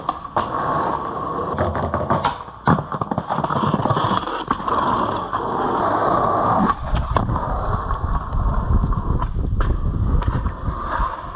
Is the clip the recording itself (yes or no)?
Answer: yes